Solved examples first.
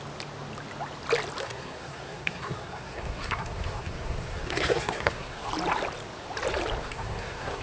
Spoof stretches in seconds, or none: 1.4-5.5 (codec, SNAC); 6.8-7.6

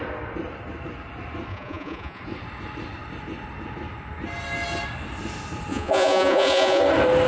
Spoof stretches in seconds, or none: 1.5-2.2 (vocoder, Vocos); 5.7-6.8

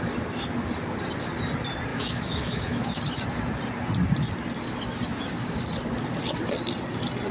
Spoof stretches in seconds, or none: 1.9-3.0 (autoencoder, DAC-VAE)

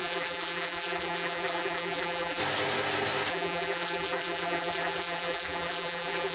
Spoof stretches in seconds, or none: 0.0-2.4 (vocoder, BigVGAN v2); 3.3-6.3

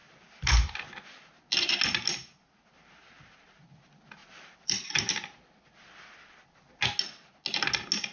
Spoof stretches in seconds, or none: 0.0-1.0 (vocoder, BigVGAN v2); 4.2-6.8

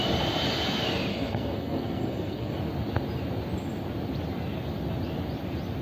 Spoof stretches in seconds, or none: 1.1-2.5 (codec, SNAC)

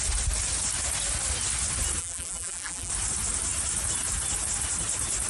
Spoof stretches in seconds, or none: 2.0-2.9 (vocoder, BigVGAN v2)

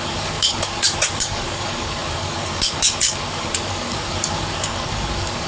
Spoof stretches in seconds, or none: 0.0-5.5 (codec, DAC)